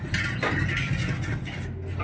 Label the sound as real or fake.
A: real